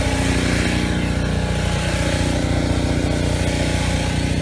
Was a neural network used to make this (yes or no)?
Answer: no